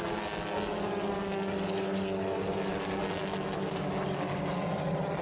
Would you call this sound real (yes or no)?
yes